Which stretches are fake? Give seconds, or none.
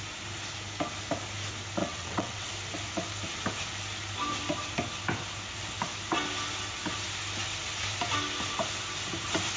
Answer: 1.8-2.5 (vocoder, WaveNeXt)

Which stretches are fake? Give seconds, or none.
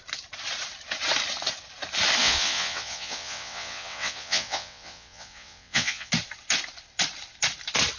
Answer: 2.2-6.1 (vocoder, WaveNeXt)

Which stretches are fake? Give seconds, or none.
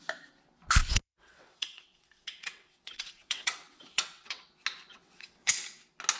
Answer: 0.8-4.5 (vocoder, WaveNeXt); 4.9-5.5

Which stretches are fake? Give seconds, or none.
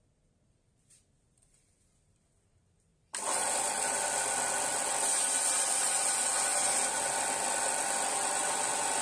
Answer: none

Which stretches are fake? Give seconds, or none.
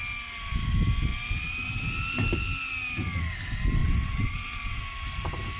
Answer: 3.8-4.8 (vocoder, WaveNeXt)